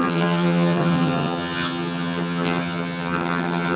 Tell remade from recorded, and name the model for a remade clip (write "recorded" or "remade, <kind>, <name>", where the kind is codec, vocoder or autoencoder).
remade, vocoder, HiFi-GAN